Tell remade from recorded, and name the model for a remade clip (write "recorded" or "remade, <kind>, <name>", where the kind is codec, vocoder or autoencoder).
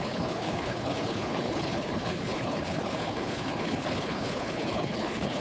remade, codec, HILCodec